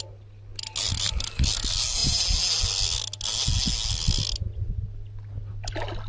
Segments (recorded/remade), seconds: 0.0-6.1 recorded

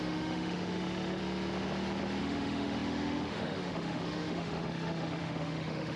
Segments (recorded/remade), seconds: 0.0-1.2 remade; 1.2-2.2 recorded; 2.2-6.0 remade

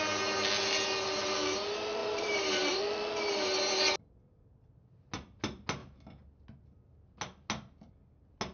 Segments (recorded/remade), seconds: 0.0-2.0 recorded; 2.0-2.8 remade; 2.8-8.5 recorded

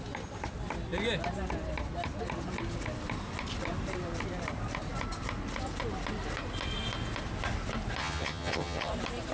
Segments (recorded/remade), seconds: 0.0-8.0 recorded; 8.0-8.9 remade; 8.9-9.3 recorded

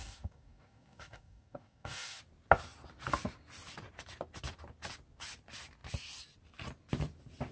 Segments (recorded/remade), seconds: 0.0-2.2 remade; 2.2-7.5 recorded

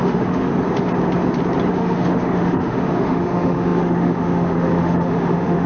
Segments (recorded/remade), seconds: 0.0-0.5 remade; 0.5-1.7 recorded; 1.7-5.7 remade

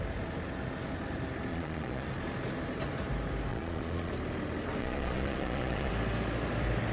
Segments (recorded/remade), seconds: 0.0-1.5 recorded; 1.5-2.1 remade; 2.1-3.5 recorded; 3.5-4.1 remade; 4.1-4.8 recorded; 4.8-5.9 remade; 5.9-6.9 recorded

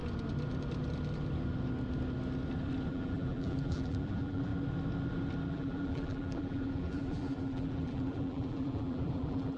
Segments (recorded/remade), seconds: 0.0-2.9 recorded; 2.9-4.5 remade; 4.5-5.5 recorded; 5.5-9.6 remade